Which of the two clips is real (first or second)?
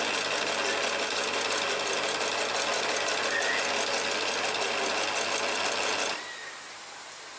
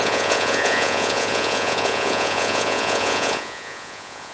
first